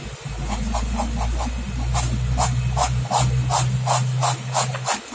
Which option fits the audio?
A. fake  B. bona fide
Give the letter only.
B